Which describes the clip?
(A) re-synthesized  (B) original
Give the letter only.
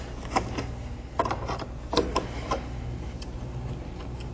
B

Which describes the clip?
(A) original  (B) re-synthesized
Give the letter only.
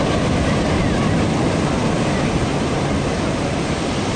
A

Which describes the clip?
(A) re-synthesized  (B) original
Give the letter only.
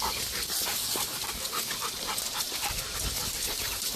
B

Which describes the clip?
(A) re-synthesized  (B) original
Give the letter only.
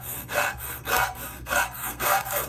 A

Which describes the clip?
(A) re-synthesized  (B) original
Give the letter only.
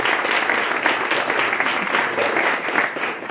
B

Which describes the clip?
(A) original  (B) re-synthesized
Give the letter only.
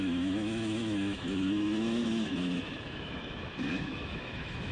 B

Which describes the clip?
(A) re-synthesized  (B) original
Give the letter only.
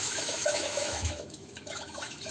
A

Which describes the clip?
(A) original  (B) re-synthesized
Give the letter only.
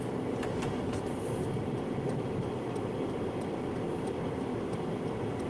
A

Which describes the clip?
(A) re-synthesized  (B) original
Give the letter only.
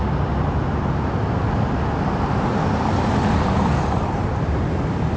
B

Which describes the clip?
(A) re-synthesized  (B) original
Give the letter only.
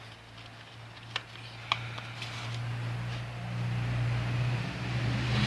B